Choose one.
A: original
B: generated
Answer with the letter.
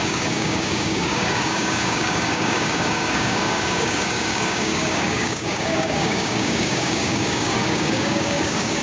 B